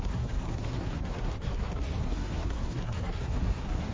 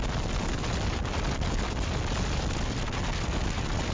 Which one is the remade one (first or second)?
first